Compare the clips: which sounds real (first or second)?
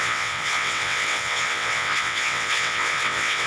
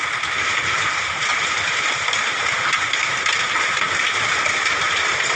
second